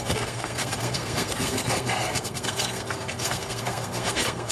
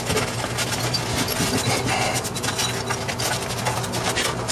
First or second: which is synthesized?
first